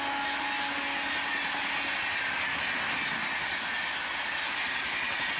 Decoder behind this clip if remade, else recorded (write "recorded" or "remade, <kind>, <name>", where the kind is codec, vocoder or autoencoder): recorded